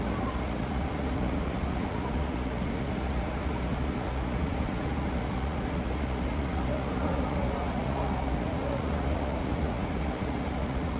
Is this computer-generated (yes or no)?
yes